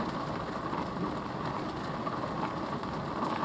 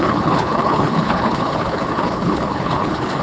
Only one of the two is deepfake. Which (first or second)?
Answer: second